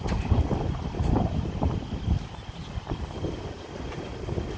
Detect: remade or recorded recorded